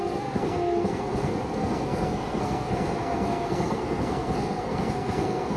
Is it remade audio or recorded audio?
remade